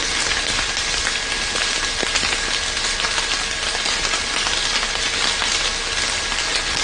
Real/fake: real